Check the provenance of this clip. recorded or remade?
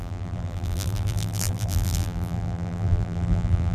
remade